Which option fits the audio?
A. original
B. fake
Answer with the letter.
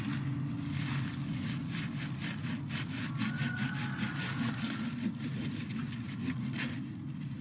A